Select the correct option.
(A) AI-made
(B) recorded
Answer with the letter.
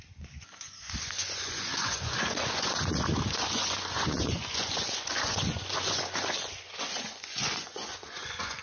A